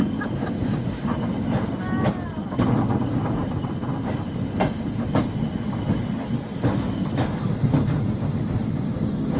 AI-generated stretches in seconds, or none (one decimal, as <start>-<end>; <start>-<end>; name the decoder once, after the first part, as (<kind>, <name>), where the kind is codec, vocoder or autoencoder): none